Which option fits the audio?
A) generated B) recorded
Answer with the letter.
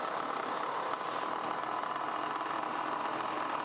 B